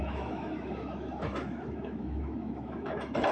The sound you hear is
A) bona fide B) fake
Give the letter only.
B